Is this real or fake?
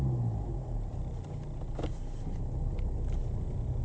real